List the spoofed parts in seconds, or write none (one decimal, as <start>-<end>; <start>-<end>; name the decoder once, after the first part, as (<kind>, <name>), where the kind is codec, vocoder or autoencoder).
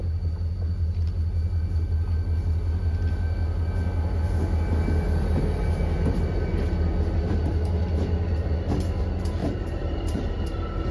9.4-10.3 (vocoder, BigVGAN v2)